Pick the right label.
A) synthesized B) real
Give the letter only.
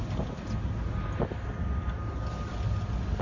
B